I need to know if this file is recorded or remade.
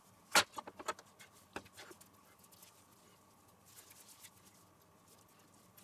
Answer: recorded